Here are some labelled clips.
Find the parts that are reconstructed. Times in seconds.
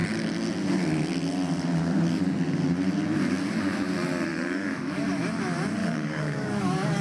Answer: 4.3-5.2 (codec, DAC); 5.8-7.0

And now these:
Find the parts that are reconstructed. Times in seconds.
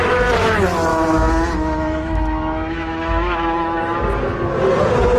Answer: 0.9-4.0 (autoencoder, DAC-VAE)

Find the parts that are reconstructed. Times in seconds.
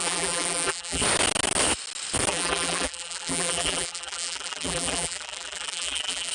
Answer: 0.0-1.0 (vocoder, BigVGAN v2); 2.3-6.3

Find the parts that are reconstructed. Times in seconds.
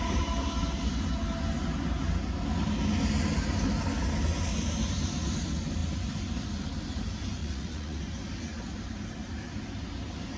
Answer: 7.4-8.0 (vocoder, Vocos)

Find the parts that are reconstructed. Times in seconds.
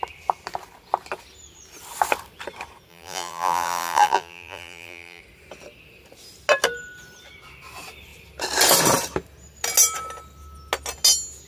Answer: 2.9-5.2 (vocoder, BigVGAN v2)